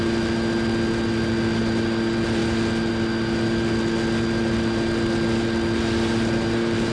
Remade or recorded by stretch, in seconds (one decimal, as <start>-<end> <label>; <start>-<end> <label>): 0.0-6.9 recorded